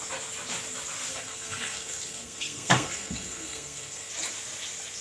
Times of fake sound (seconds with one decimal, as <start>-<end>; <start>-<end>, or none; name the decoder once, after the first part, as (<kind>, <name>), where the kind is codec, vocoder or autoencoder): 1.1-4.1 (codec, SNAC)